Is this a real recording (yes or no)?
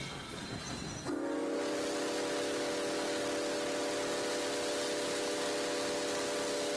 yes